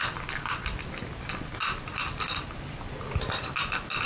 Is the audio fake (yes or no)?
no